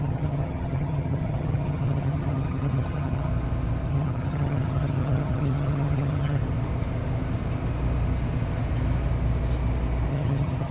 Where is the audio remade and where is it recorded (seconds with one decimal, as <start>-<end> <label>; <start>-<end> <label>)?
0.0-3.3 remade; 3.3-3.9 recorded; 3.9-6.4 remade; 6.4-10.1 recorded; 10.1-10.7 remade